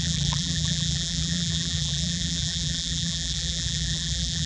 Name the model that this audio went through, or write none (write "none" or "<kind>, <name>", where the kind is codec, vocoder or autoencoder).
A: vocoder, BigVGAN v2